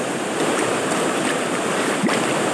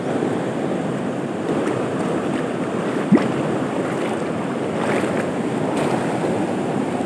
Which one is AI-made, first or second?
first